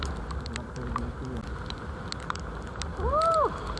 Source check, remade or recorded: recorded